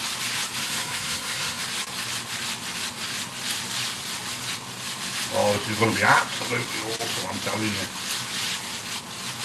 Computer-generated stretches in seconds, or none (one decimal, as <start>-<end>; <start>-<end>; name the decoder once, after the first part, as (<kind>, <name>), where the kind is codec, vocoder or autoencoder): 0.6-1.6 (codec, SNAC)